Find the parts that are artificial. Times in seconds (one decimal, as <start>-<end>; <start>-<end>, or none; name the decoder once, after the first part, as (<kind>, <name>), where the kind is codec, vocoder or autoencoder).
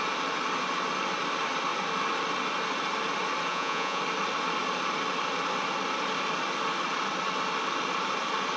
3.5-4.0 (vocoder, Vocos)